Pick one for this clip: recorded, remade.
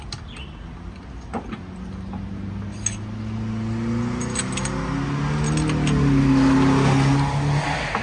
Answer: recorded